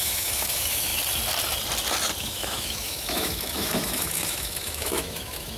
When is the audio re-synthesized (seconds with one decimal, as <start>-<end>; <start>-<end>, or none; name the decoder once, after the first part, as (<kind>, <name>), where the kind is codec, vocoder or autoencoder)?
0.0-0.9 (autoencoder, DAC-VAE); 2.2-5.6